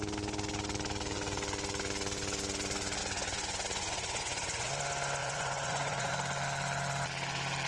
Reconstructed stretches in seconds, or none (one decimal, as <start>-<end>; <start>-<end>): 3.0-4.7; 5.2-6.1